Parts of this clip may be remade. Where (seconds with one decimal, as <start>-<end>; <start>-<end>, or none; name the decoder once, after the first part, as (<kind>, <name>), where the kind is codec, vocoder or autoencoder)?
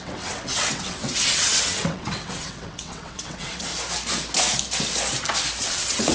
0.0-3.7 (vocoder, WaveNeXt); 5.6-6.1